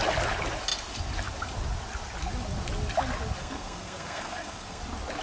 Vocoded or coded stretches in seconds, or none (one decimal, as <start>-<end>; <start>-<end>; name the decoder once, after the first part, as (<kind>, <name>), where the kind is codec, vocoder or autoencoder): 3.4-4.8 (codec, SNAC)